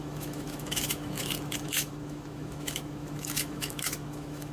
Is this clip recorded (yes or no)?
no